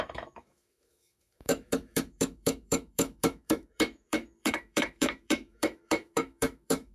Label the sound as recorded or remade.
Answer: remade